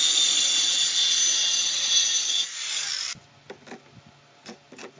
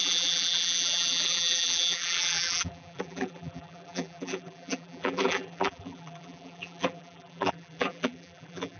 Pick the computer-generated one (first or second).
second